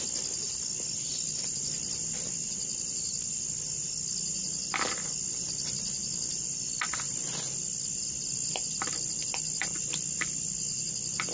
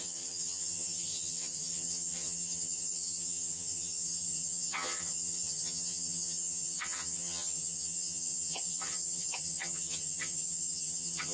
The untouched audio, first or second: first